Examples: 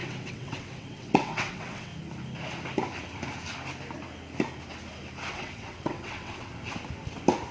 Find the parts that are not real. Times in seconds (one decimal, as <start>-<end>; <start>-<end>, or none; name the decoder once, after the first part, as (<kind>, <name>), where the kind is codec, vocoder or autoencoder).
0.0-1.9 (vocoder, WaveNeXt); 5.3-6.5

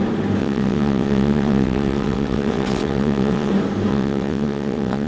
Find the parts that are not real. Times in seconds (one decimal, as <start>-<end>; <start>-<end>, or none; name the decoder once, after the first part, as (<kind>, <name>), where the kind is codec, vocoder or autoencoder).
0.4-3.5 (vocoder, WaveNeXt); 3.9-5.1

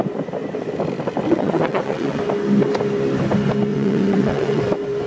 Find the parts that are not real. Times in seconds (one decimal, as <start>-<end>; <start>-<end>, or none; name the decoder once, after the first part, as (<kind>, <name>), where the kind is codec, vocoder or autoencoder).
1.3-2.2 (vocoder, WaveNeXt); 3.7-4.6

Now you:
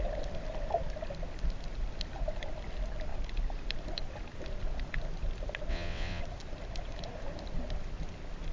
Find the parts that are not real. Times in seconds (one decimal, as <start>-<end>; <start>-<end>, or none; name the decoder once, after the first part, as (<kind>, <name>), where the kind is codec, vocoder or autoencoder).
5.7-6.2 (vocoder, WaveNeXt)

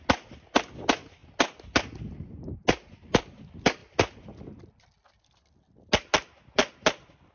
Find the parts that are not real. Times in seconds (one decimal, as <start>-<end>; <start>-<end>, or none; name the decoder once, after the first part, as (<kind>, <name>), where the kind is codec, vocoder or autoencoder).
none